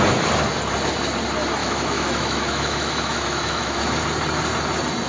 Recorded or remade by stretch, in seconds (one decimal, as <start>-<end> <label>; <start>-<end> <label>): 0.0-1.6 recorded; 1.6-3.8 remade; 3.8-5.1 recorded